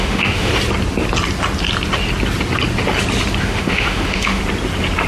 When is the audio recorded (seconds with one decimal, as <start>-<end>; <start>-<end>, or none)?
0.5-3.4; 4.4-5.1